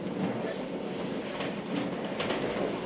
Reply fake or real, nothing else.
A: real